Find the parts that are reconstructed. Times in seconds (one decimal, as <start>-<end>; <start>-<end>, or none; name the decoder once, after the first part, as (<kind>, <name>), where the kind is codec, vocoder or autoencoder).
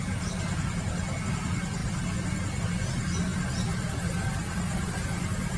none